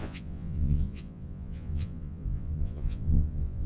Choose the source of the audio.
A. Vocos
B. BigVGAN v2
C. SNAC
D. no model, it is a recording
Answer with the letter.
A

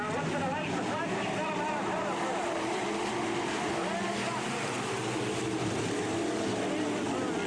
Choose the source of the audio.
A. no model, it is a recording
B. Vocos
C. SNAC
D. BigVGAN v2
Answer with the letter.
A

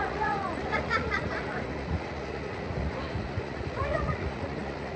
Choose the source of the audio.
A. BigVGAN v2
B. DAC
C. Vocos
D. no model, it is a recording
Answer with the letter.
C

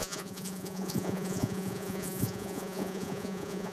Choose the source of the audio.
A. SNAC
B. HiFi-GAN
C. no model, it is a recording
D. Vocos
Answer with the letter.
D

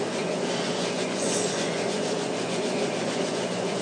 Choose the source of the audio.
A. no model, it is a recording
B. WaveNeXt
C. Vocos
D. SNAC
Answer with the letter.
C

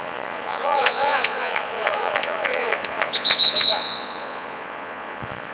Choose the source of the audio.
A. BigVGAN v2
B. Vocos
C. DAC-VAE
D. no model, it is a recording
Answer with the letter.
B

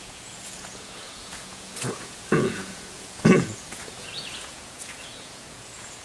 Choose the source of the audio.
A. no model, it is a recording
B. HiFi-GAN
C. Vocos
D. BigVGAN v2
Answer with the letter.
C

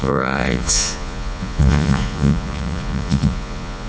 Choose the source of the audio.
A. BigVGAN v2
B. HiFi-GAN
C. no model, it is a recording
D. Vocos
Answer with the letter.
D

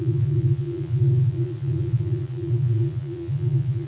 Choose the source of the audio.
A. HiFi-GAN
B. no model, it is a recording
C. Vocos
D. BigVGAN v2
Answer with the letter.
C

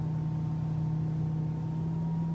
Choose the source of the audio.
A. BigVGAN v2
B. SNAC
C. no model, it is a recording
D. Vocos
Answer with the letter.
C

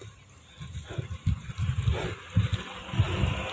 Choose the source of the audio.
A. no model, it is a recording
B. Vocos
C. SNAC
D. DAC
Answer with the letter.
A